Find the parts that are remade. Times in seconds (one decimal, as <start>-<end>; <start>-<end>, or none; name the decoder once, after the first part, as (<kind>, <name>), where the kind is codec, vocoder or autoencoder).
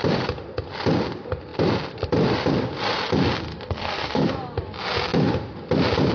3.5-4.3 (codec, SNAC)